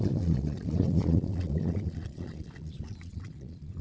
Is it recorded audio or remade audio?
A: remade